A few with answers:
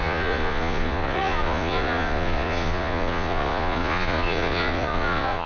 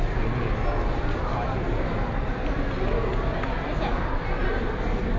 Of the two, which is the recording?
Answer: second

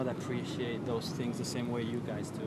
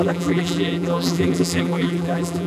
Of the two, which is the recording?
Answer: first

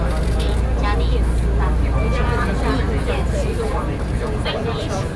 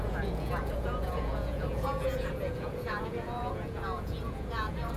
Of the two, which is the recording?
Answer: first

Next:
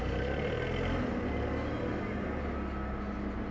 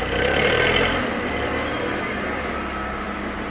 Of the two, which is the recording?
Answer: first